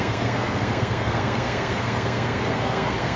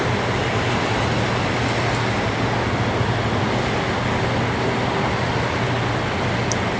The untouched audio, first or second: second